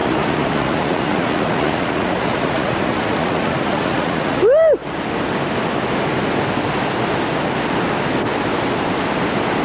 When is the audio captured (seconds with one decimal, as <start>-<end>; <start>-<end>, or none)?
4.4-9.6